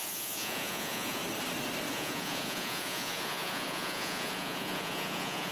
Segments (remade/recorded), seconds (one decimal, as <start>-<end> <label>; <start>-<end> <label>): 0.0-1.2 remade; 1.2-1.9 recorded; 1.9-5.5 remade